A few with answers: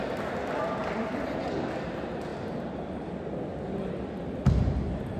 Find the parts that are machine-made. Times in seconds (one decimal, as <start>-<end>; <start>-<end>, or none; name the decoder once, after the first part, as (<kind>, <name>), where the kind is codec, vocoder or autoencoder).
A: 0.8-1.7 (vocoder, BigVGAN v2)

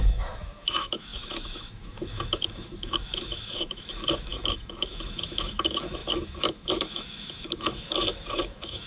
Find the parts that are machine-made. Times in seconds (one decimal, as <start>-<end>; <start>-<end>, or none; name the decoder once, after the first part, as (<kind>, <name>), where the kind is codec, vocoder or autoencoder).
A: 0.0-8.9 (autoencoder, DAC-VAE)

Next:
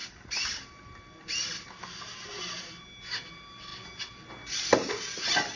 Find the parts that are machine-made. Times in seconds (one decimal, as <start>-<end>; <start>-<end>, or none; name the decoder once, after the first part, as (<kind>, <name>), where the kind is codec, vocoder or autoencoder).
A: none